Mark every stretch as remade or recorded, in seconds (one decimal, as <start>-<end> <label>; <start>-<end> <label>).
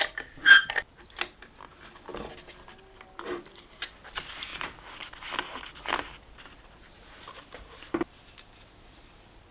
0.0-9.5 recorded